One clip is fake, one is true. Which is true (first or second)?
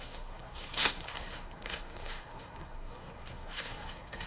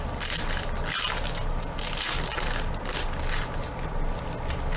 second